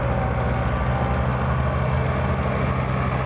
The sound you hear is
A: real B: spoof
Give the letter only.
A